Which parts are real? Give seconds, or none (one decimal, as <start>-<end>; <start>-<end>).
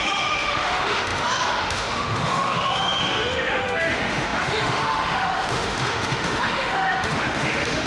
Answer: none